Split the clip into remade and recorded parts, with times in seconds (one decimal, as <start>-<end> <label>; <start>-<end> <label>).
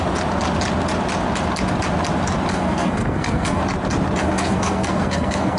0.0-2.5 recorded; 2.5-3.6 remade; 3.6-4.2 recorded; 4.2-5.6 remade